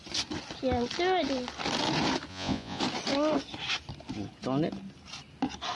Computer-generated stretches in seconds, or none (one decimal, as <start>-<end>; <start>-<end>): 2.3-2.8